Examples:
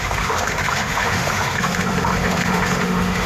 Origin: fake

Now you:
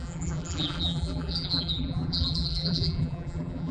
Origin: fake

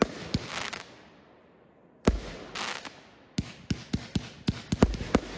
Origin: real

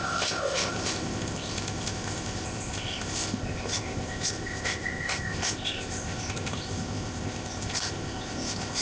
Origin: fake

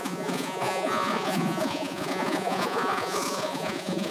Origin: fake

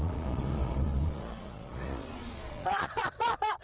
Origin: fake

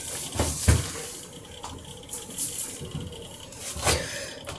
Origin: real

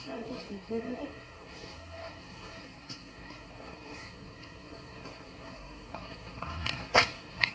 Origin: fake